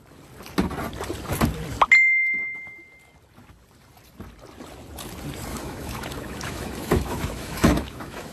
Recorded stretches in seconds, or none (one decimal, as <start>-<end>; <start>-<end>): 0.0-5.5